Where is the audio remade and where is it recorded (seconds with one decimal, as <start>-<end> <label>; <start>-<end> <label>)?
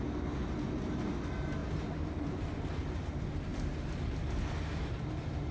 0.0-5.5 recorded